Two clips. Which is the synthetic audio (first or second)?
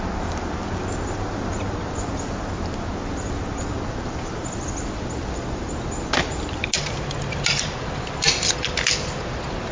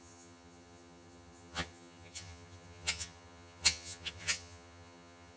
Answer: second